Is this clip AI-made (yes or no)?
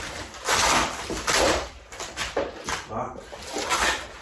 yes